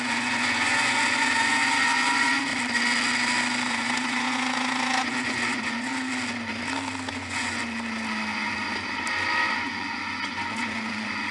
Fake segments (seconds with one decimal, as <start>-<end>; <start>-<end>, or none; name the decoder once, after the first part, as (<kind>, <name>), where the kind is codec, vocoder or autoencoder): 0.0-2.5 (vocoder, Vocos); 3.7-5.9; 7.1-7.6; 9.5-11.3